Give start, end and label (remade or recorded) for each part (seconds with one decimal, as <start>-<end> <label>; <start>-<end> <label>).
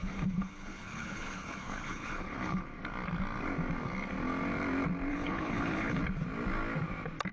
0.0-2.6 remade; 2.6-5.1 recorded; 5.1-6.0 remade; 6.0-7.3 recorded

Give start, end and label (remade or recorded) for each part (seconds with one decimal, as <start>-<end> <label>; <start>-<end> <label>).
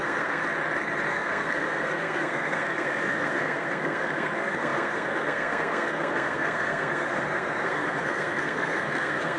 0.0-0.4 remade; 0.4-1.1 recorded; 1.1-9.4 remade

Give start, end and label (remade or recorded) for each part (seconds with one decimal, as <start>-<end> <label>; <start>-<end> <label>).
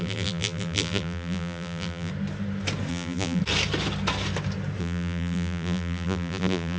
0.0-2.1 remade; 2.1-2.9 recorded; 2.9-3.4 remade; 3.4-4.8 recorded; 4.8-6.8 remade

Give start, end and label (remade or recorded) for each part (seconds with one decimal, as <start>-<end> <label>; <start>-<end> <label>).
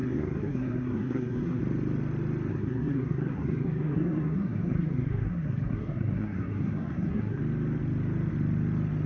0.0-1.6 remade; 1.6-2.5 recorded; 2.5-7.4 remade; 7.4-9.1 recorded